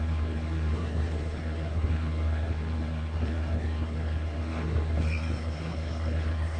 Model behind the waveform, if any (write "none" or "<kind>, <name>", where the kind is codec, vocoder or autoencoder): codec, SNAC